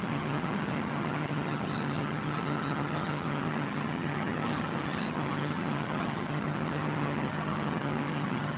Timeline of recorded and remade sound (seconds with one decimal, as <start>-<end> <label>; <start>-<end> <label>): 0.0-8.6 remade